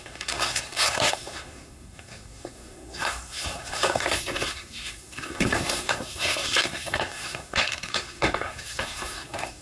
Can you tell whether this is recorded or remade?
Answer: remade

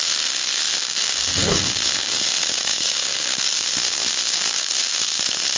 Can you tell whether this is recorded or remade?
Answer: remade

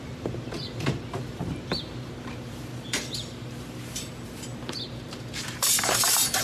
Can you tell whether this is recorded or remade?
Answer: remade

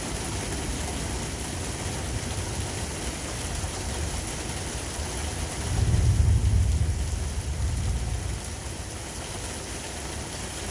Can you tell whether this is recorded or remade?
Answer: recorded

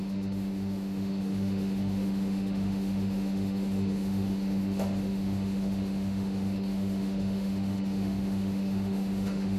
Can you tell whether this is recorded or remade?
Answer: remade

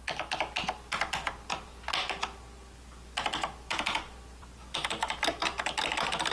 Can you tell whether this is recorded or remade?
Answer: recorded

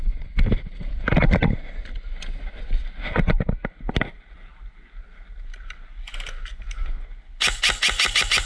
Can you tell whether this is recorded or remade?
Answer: recorded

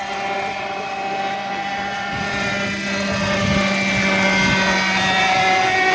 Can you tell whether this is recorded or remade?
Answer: recorded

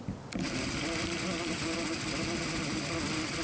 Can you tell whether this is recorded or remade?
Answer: recorded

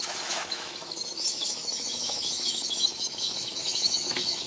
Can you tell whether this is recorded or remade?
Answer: remade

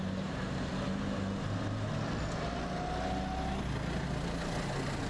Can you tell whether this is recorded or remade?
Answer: recorded